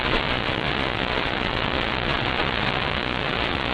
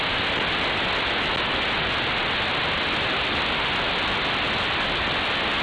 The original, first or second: second